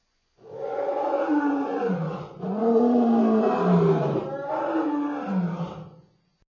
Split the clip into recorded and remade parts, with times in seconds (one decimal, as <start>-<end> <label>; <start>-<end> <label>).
0.0-2.6 remade; 2.6-6.6 recorded